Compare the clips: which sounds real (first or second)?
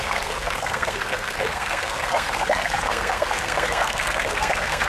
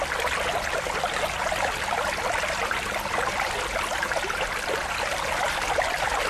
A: second